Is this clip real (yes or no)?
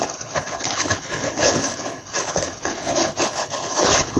no